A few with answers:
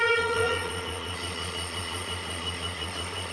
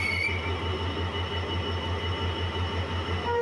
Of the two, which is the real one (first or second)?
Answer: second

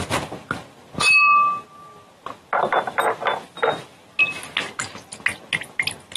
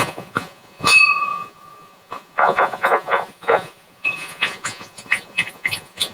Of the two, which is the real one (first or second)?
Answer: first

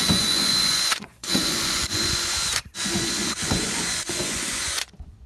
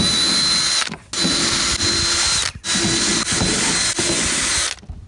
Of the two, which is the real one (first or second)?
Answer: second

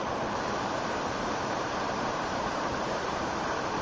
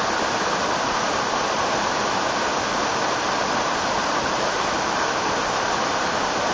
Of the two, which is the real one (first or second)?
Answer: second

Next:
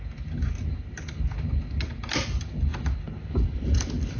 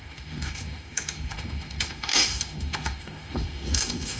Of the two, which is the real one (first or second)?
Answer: first